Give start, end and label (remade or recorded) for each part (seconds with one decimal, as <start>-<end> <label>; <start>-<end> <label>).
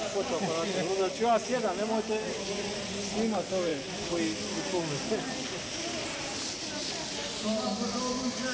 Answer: 0.0-8.5 recorded